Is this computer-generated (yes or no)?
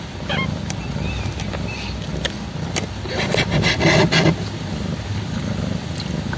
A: no